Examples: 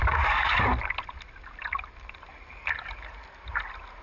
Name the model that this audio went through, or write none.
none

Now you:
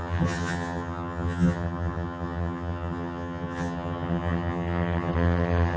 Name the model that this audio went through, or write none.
vocoder, HiFi-GAN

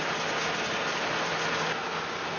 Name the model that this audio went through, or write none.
none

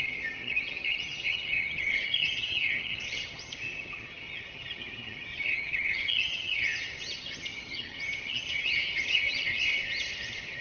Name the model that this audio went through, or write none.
vocoder, HiFi-GAN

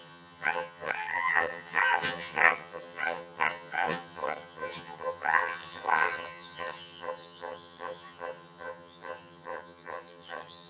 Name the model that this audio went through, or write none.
vocoder, HiFi-GAN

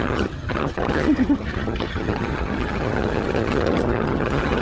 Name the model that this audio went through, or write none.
vocoder, HiFi-GAN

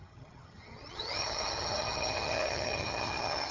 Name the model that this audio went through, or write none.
vocoder, HiFi-GAN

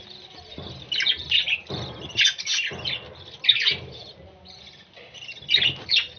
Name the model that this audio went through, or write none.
none